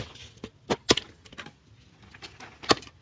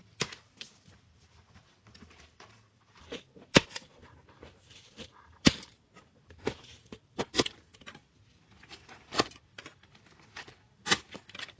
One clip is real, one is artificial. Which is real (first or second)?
first